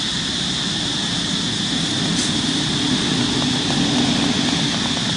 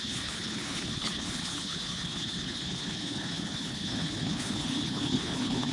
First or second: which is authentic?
first